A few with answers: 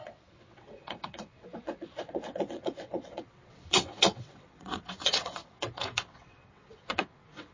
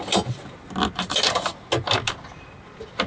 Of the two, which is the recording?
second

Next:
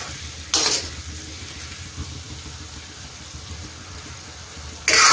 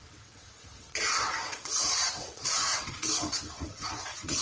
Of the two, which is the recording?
first